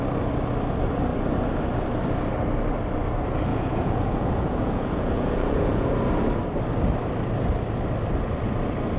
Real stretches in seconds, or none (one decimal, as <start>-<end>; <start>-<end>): 0.0-3.5; 5.9-9.0